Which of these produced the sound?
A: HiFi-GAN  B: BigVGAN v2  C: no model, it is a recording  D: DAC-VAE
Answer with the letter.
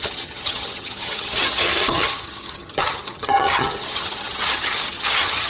A